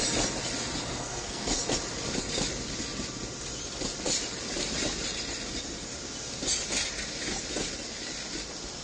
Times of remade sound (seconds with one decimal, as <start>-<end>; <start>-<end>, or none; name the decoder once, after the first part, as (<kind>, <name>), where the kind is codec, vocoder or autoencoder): 0.8-1.6 (codec, SNAC)